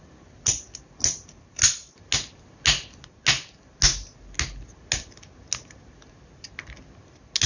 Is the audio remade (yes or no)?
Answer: no